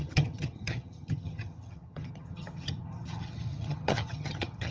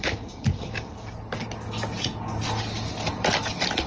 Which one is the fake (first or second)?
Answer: first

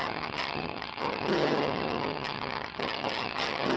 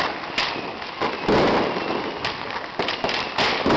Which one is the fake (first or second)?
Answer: first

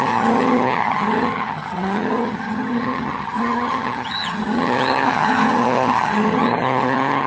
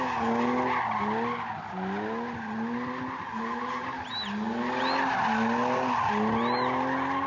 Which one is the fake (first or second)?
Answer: first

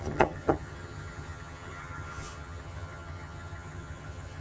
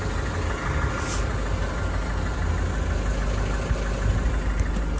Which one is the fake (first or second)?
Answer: first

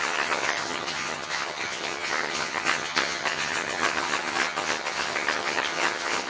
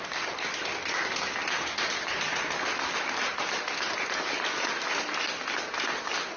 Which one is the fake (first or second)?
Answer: first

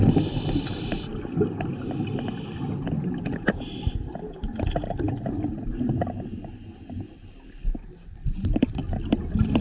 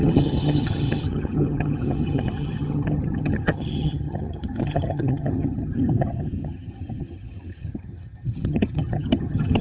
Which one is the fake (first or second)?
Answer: second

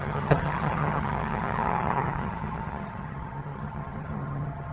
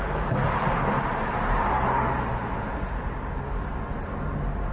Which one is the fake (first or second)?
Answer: first